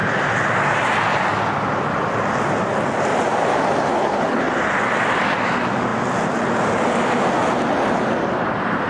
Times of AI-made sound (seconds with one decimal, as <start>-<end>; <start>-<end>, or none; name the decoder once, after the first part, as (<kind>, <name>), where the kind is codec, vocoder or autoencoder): 3.9-4.4 (codec, HILCodec)